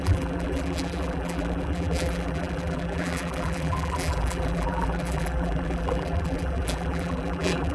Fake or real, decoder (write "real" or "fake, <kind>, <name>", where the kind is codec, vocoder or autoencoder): fake, vocoder, BigVGAN v2